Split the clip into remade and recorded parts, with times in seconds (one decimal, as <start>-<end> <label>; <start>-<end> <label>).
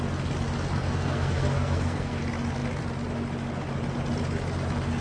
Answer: 0.0-0.8 recorded; 0.8-2.2 remade; 2.2-5.0 recorded